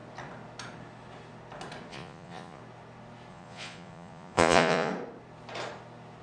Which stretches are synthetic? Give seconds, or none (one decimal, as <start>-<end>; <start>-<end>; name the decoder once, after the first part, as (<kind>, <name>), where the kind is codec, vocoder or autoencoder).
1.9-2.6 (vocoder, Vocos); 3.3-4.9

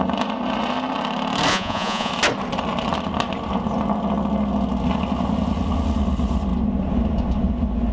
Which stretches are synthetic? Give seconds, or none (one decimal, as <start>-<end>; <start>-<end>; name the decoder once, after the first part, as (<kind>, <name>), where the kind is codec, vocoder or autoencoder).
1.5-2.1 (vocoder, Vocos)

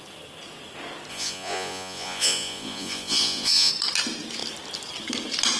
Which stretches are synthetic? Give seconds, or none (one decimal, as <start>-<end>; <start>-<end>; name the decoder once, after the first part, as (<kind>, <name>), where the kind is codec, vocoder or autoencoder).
1.1-3.7 (vocoder, Vocos)

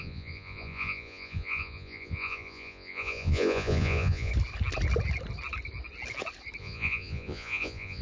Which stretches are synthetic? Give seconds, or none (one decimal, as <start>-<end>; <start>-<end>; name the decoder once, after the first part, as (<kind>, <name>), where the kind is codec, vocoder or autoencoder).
0.0-4.3 (vocoder, Vocos); 6.6-8.0

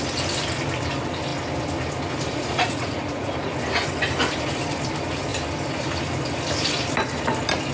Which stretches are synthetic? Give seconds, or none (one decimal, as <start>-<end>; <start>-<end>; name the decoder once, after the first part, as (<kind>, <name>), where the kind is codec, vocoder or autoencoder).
2.3-3.3 (vocoder, Vocos)